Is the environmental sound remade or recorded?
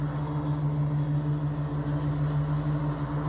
recorded